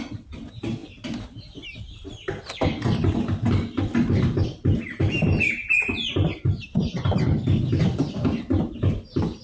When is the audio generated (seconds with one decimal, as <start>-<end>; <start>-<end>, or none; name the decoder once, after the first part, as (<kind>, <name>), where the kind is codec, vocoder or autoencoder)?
none